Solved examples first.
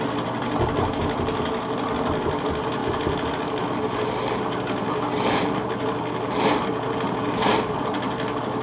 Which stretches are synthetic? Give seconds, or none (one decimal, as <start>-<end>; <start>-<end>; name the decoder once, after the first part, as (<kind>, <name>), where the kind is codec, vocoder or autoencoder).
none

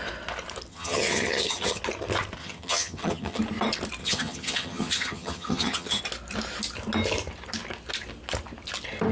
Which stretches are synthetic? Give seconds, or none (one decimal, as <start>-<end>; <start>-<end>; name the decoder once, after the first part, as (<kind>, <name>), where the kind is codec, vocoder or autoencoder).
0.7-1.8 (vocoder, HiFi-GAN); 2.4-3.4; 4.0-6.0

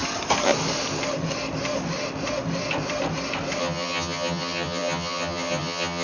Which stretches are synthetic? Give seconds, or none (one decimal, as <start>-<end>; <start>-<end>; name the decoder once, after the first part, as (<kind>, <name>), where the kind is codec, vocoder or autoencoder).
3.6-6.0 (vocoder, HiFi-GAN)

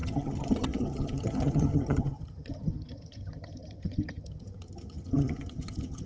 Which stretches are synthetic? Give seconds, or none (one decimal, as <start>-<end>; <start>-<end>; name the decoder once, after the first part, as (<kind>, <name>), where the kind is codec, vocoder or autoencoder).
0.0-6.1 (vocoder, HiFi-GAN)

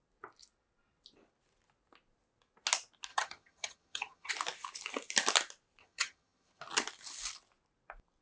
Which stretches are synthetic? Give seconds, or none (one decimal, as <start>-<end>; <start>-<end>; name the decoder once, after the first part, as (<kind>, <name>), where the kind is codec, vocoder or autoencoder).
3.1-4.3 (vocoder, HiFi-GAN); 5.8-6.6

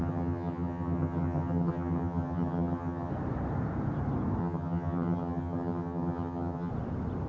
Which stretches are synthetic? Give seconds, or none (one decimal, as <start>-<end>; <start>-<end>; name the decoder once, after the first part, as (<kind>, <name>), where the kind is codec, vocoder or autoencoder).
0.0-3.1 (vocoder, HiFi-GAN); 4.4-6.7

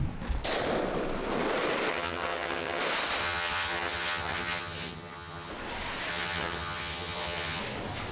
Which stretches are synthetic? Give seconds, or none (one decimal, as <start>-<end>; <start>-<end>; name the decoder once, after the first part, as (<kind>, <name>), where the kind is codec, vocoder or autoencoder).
1.9-2.8 (vocoder, HiFi-GAN); 3.2-5.5; 6.1-7.6